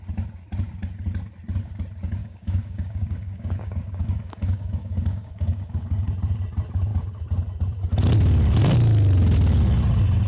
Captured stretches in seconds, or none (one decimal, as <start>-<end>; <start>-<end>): 0.0-2.2; 6.1-10.3

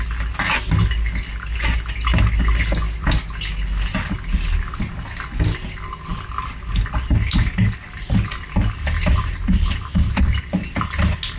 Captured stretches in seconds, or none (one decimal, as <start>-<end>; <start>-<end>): 0.0-11.4

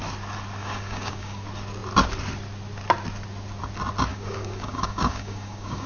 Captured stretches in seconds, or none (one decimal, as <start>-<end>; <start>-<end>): 0.0-0.6; 1.4-4.1

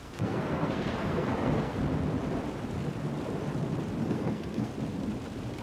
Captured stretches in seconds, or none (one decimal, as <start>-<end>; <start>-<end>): 1.8-4.0; 4.7-5.6

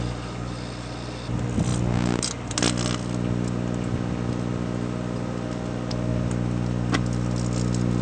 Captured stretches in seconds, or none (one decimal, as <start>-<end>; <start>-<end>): 0.0-8.0

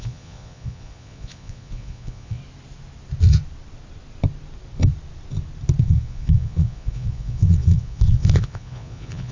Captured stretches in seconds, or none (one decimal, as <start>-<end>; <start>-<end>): 2.4-5.8